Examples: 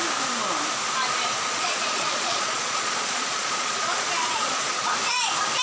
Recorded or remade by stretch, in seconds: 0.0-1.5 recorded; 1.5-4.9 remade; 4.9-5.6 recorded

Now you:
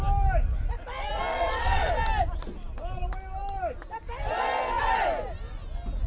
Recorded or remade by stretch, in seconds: 0.0-1.3 recorded; 1.3-1.9 remade; 1.9-6.1 recorded

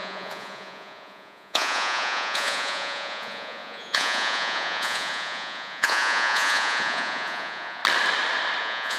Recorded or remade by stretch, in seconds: 0.0-7.8 remade; 7.8-8.6 recorded; 8.6-9.0 remade

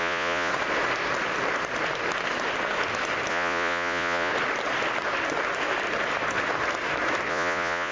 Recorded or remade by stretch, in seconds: 0.0-0.5 remade; 0.5-3.3 recorded; 3.3-4.3 remade; 4.3-7.3 recorded; 7.3-7.9 remade

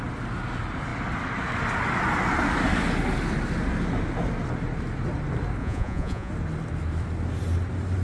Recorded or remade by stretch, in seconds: 0.0-5.6 recorded; 5.6-6.3 remade; 6.3-8.0 recorded

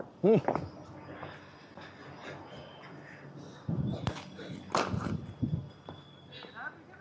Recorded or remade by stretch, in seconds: 0.0-7.0 recorded

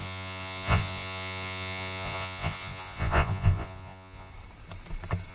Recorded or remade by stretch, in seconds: 0.0-4.3 remade; 4.3-5.3 recorded

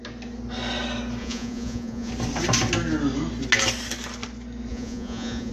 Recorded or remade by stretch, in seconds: 0.0-1.2 recorded; 1.2-2.1 remade; 2.1-4.7 recorded; 4.7-5.5 remade